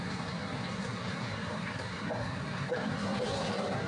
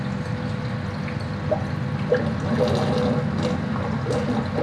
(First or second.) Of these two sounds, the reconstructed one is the first